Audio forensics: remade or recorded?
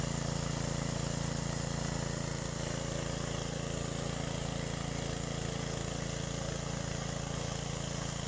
recorded